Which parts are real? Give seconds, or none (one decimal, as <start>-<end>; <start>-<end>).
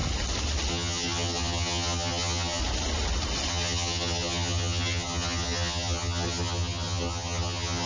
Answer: 0.0-0.7; 2.6-3.5